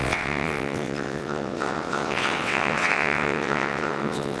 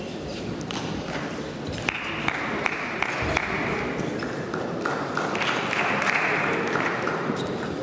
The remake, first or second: first